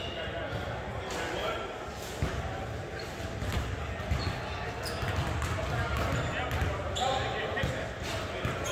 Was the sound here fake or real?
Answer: real